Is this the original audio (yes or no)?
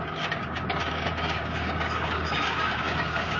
no